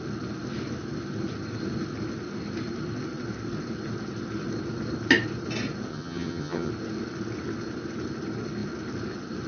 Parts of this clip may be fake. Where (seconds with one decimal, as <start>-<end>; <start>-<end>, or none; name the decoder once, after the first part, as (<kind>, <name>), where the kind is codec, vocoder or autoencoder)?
5.9-6.7 (vocoder, HiFi-GAN)